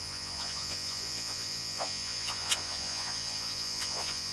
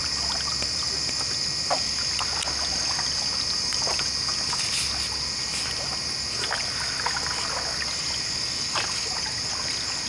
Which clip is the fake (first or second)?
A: first